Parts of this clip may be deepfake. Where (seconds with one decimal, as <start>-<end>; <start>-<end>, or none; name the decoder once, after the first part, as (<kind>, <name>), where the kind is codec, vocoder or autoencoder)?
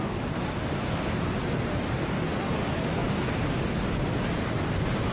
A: none